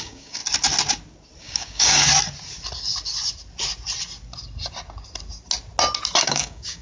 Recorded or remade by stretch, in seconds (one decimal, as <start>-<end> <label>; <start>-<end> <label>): 0.0-0.4 remade; 0.4-1.4 recorded; 1.4-2.1 remade; 2.1-6.2 recorded; 6.2-6.8 remade